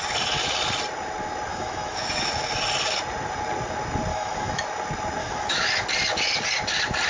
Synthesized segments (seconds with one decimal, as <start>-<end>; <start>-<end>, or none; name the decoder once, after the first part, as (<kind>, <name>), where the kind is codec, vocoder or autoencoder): 1.5-2.3 (autoencoder, DAC-VAE); 4.1-4.6; 5.2-5.7

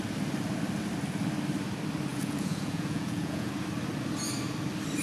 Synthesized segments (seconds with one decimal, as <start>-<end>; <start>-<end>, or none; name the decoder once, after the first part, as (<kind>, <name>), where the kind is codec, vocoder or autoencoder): 2.1-3.5 (vocoder, Vocos)

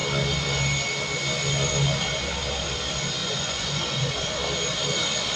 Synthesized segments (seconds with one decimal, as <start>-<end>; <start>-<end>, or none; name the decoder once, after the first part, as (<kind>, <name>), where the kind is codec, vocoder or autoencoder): 3.2-4.3 (vocoder, Vocos)

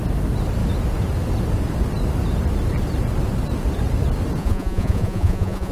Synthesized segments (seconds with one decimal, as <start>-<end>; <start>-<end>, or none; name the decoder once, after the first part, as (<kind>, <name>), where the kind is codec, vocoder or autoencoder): 4.4-5.7 (vocoder, Vocos)

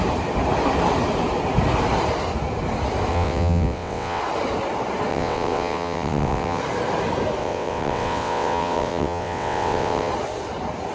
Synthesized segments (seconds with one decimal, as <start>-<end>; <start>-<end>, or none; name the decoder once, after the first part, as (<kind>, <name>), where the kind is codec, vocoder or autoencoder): 3.1-4.2 (vocoder, WaveNeXt); 5.1-6.6; 7.4-10.1

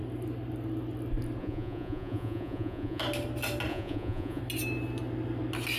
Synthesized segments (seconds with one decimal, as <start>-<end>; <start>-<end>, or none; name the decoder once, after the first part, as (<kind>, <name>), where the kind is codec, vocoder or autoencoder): 1.4-3.0 (vocoder, Vocos); 3.7-4.4